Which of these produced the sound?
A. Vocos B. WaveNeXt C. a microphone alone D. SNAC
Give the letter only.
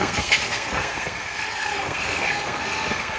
D